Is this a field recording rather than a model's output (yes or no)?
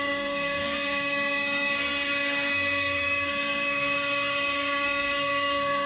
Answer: no